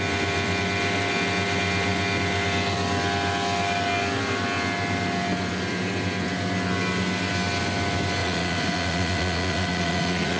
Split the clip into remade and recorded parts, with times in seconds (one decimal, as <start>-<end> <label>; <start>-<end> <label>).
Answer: 0.0-8.2 recorded; 8.2-10.4 remade